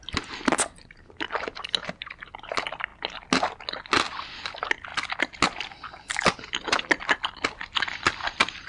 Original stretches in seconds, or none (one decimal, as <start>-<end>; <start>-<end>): 0.0-8.7